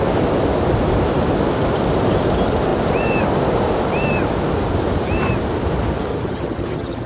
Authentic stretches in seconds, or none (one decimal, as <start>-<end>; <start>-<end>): 0.0-6.1